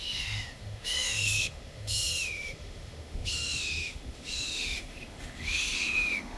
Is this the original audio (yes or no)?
no